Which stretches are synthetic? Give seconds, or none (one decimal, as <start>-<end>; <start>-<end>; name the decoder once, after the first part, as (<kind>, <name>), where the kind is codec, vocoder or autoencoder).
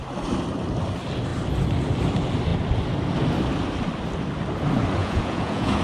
5.0-5.8 (vocoder, Vocos)